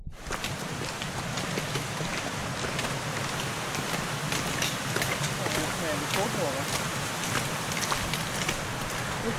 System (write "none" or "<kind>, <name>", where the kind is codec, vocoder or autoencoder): none